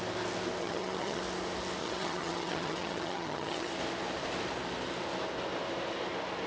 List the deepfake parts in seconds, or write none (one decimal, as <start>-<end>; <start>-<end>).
0.6-1.2; 1.8-3.7

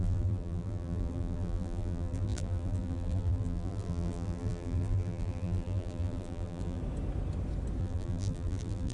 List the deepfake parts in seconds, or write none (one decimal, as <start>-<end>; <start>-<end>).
0.0-6.8; 7.8-8.9

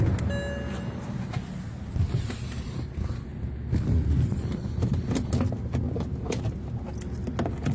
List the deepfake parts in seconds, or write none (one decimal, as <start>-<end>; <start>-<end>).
none

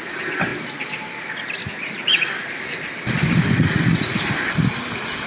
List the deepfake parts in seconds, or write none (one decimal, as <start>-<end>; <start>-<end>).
none

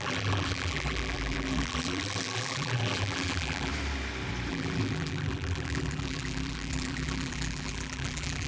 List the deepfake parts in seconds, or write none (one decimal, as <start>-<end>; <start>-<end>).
0.0-3.7; 4.5-8.5

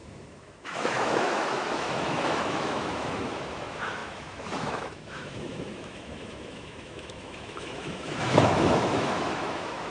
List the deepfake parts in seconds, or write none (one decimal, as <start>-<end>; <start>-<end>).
0.0-9.9